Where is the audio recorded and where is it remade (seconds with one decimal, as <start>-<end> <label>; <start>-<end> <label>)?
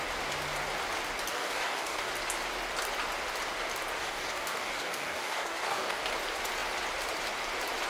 0.0-1.3 recorded; 1.3-2.1 remade; 2.1-4.0 recorded; 4.0-6.0 remade; 6.0-7.9 recorded